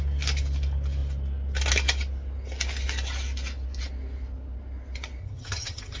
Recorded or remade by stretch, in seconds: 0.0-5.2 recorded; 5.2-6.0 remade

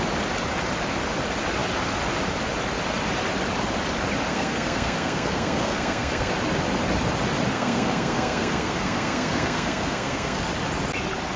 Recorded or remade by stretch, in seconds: 0.0-4.3 recorded; 4.3-6.3 remade; 6.3-7.5 recorded; 7.5-10.4 remade; 10.4-11.4 recorded

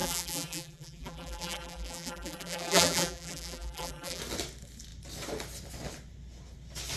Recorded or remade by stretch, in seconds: 0.0-4.2 remade; 4.2-7.0 recorded

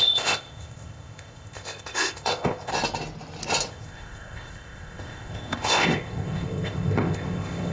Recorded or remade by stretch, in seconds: 0.0-2.7 remade; 2.7-3.7 recorded; 3.7-7.7 remade

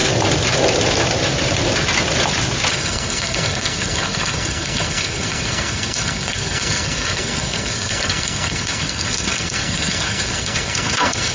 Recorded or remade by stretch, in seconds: 0.0-2.7 recorded; 2.7-11.3 remade

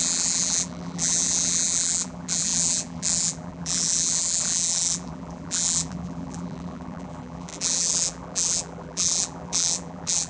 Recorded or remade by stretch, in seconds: 0.0-10.3 remade